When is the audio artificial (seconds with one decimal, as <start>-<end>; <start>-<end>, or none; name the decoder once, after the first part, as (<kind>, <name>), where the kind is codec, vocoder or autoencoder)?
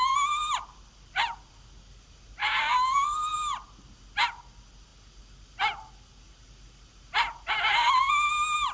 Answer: none